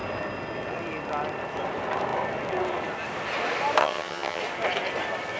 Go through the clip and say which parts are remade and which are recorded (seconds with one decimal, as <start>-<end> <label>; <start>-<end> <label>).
0.0-3.8 recorded; 3.8-4.4 remade; 4.4-5.4 recorded